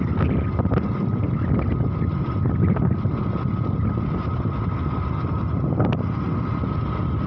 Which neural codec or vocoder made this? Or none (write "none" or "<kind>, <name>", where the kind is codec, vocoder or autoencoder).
none